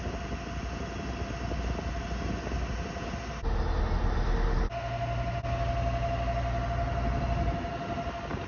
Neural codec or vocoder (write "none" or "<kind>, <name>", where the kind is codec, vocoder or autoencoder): none